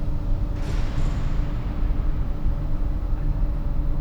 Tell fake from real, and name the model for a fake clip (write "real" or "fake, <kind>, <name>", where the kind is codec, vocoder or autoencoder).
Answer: real